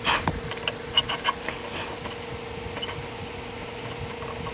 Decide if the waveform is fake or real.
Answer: real